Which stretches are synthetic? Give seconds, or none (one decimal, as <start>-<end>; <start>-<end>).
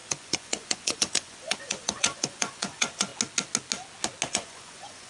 0.0-3.1; 4.3-5.1